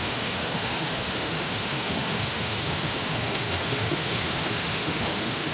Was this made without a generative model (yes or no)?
no